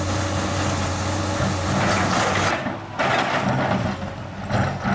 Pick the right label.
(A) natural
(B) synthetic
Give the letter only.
A